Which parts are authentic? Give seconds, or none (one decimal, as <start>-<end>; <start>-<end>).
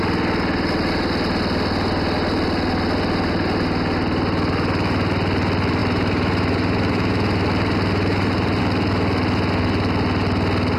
0.0-5.8; 8.6-10.8